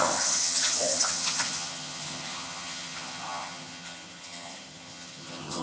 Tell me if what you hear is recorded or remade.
remade